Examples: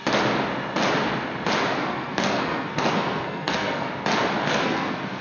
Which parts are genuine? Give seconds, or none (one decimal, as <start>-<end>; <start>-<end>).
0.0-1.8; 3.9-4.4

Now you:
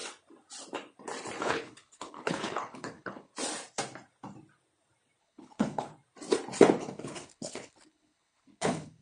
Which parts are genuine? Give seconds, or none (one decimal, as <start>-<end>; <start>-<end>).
0.0-1.4; 3.3-5.2; 5.9-6.8

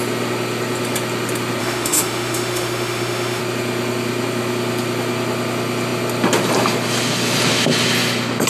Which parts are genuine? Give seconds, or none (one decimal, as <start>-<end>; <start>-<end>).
0.0-1.6; 3.4-8.5

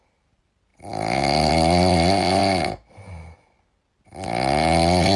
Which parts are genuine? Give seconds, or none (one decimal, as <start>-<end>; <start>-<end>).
0.0-5.2

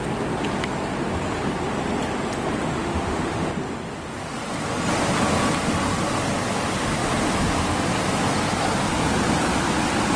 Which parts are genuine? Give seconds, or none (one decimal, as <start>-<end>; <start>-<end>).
0.0-2.8; 3.5-10.2